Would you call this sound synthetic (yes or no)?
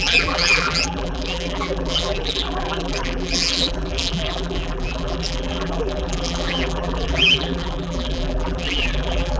yes